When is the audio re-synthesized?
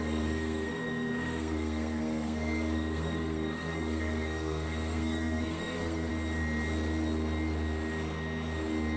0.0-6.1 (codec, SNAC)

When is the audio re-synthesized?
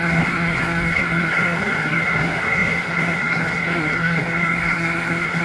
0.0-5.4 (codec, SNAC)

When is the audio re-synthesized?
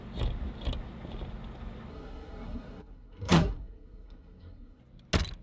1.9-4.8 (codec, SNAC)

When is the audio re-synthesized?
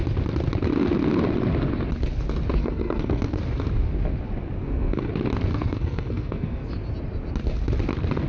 2.6-3.4 (codec, SNAC); 4.6-5.1; 5.5-6.7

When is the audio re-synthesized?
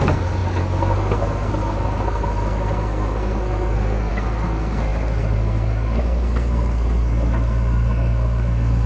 0.0-8.9 (codec, SNAC)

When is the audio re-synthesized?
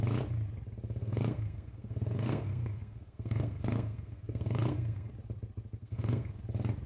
1.0-5.1 (codec, SNAC); 5.8-6.4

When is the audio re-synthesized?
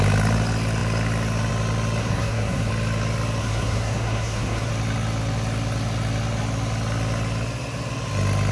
2.0-2.7 (codec, SNAC); 3.4-4.7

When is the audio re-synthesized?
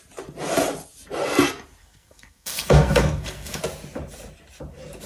1.8-3.6 (codec, SNAC)